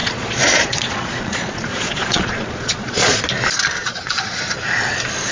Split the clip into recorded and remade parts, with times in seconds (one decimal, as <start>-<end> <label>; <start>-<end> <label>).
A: 0.0-3.2 remade; 3.2-3.8 recorded; 3.8-4.5 remade; 4.5-5.3 recorded